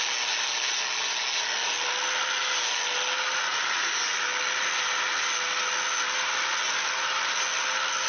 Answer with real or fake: real